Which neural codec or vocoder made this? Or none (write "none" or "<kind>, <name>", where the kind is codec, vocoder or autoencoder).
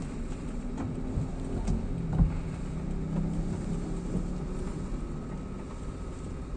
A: none